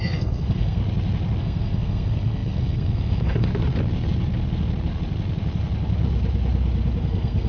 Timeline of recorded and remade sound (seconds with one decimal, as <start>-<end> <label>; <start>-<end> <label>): 0.0-0.8 remade; 0.8-1.4 recorded; 1.4-3.5 remade; 3.5-7.0 recorded; 7.0-7.5 remade